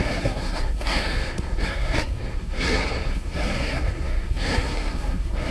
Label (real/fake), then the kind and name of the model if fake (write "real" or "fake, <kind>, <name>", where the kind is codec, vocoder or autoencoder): fake, codec, SNAC